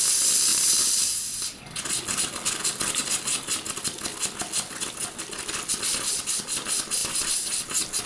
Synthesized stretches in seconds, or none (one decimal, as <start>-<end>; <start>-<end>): none